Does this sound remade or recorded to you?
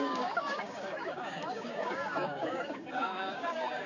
remade